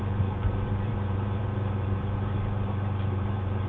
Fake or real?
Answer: fake